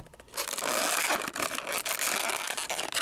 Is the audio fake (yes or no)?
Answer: no